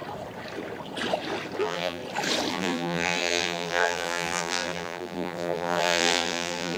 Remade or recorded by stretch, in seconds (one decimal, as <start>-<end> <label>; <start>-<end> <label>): 0.0-1.6 recorded; 1.6-2.0 remade; 2.0-2.5 recorded; 2.5-6.8 remade